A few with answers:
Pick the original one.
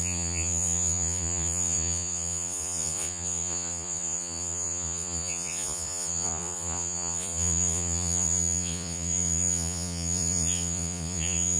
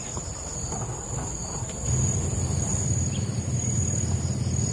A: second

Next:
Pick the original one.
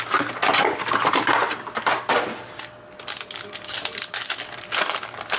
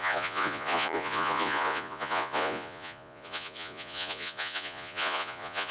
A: first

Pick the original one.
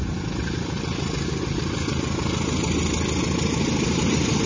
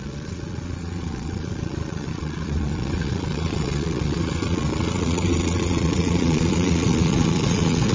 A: first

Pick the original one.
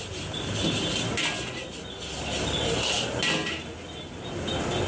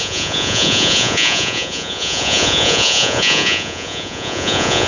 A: first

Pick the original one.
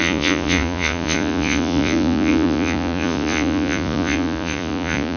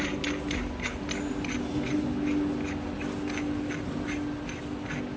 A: second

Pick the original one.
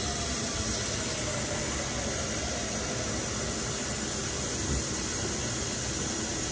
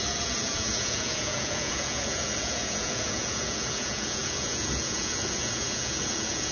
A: first